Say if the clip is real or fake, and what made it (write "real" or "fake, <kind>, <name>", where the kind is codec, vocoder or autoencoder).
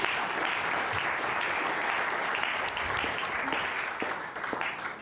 real